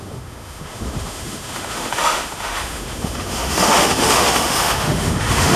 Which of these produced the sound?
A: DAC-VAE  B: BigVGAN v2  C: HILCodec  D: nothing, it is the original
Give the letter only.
A